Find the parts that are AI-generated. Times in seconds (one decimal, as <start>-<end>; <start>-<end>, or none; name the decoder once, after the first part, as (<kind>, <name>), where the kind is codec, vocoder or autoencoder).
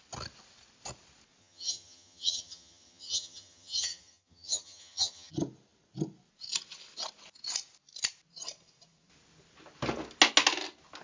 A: 1.4-5.3 (vocoder, HiFi-GAN)